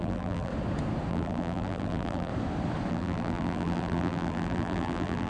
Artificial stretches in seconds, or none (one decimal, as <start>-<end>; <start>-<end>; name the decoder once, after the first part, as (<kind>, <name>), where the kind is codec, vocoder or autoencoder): 0.0-0.5 (vocoder, BigVGAN v2); 1.1-2.3; 2.9-5.3